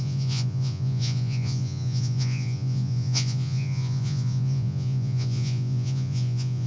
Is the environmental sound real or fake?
fake